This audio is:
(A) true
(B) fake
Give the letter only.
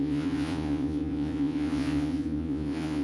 B